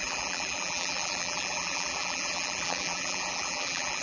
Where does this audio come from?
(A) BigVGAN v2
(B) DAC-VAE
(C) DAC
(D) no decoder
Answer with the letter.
A